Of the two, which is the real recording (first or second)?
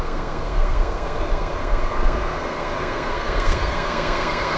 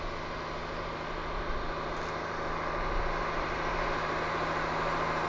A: second